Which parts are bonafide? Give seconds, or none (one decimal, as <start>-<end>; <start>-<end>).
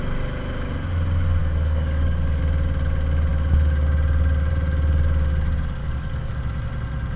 0.0-1.4; 2.4-5.8; 6.3-7.2